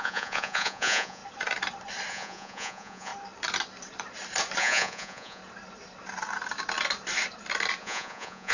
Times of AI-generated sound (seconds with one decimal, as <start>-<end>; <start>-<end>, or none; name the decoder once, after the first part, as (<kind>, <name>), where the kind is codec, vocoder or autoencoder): 0.0-1.2 (vocoder, Vocos); 2.1-3.1; 4.6-5.4; 7.8-8.5